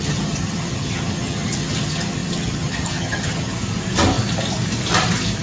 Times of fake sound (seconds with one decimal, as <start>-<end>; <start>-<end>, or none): 0.0-3.5